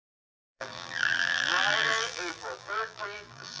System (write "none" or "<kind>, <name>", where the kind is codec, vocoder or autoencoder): vocoder, BigVGAN v2